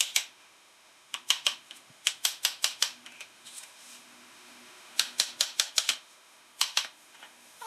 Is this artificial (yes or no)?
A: yes